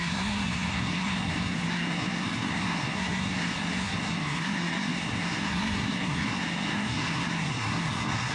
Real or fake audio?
fake